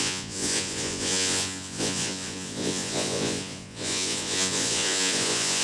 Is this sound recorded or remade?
remade